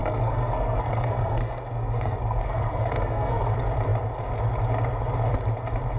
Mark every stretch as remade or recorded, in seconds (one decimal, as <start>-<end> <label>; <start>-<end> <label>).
0.0-3.4 remade; 3.4-6.0 recorded

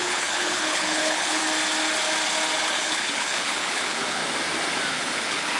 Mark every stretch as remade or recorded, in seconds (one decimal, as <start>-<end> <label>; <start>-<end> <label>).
0.0-1.4 remade; 1.4-2.6 recorded; 2.6-4.2 remade; 4.2-4.9 recorded; 4.9-5.6 remade

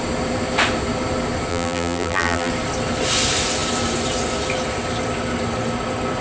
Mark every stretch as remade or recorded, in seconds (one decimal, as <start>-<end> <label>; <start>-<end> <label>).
0.0-1.5 recorded; 1.5-2.5 remade; 2.5-6.2 recorded

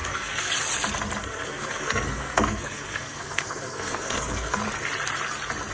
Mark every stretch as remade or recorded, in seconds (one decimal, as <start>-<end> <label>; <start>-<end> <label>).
0.0-0.5 remade; 0.5-1.2 recorded; 1.2-4.6 remade; 4.6-5.7 recorded

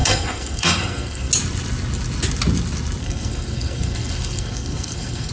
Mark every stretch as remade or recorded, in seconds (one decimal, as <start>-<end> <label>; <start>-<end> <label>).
0.0-1.3 remade; 1.3-3.0 recorded; 3.0-5.3 remade

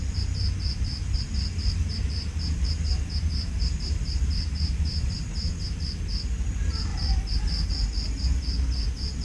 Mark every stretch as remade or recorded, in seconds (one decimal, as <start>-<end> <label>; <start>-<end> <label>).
0.0-1.8 recorded; 1.8-5.9 remade; 5.9-9.2 recorded